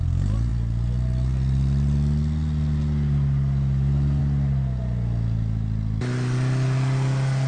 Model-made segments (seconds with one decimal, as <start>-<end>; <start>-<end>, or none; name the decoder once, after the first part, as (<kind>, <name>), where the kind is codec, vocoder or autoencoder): none